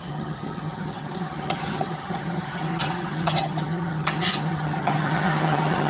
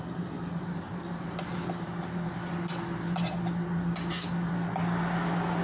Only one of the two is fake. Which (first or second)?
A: first